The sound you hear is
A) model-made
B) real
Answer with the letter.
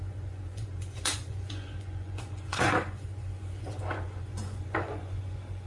A